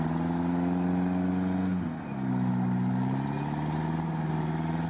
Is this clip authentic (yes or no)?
yes